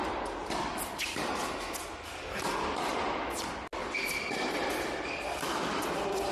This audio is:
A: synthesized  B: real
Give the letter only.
B